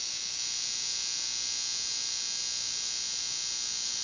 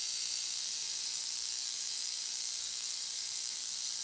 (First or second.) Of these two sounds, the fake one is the second